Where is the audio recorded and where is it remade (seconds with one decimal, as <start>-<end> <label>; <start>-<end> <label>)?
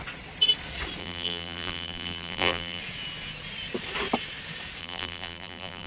0.0-1.0 recorded; 1.0-2.8 remade; 2.8-4.8 recorded; 4.8-5.9 remade